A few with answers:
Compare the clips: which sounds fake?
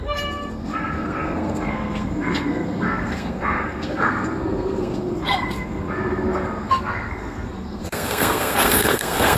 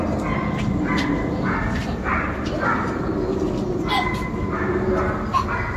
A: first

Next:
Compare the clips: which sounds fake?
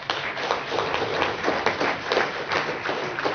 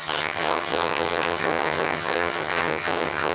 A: second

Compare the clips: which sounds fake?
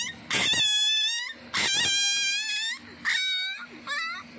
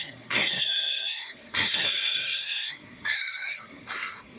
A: second